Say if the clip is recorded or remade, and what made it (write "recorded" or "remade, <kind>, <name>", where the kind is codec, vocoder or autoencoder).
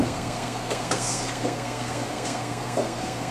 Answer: remade, codec, SNAC